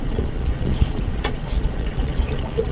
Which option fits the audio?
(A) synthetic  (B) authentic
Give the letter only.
A